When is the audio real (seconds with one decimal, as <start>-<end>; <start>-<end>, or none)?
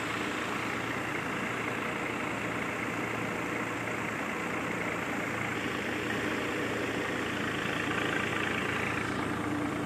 0.0-9.9